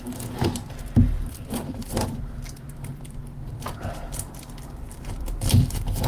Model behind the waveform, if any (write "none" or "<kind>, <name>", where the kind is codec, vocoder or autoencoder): vocoder, BigVGAN v2